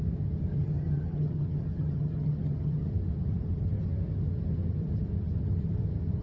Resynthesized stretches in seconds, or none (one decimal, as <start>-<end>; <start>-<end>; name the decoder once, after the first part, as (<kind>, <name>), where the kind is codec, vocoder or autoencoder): 0.5-2.9 (vocoder, HiFi-GAN)